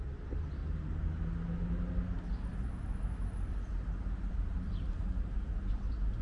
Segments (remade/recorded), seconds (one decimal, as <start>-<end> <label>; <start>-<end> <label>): 0.0-0.6 remade; 0.6-4.3 recorded; 4.3-6.2 remade